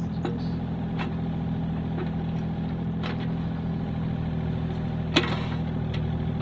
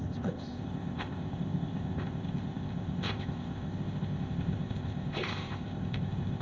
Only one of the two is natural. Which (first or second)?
first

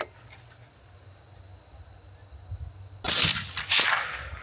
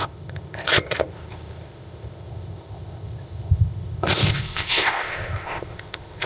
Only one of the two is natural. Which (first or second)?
first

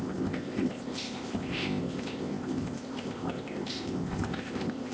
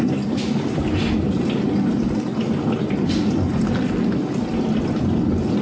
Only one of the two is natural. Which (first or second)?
second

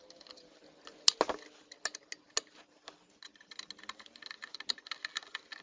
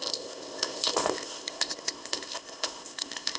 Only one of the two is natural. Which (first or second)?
first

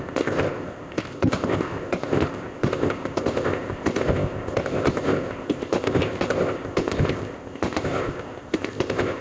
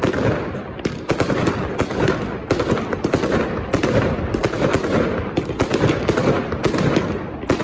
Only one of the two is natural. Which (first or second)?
second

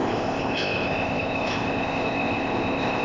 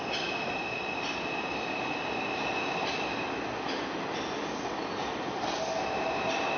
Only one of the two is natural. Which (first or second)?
second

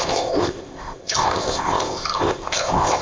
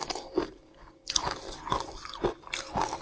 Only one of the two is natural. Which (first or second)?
second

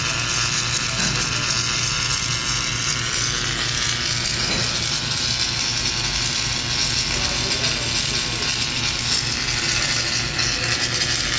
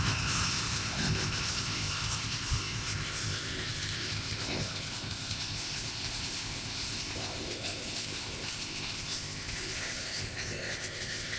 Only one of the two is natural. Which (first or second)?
first